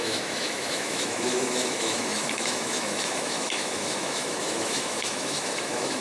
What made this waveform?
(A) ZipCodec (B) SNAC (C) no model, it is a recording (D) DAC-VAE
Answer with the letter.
D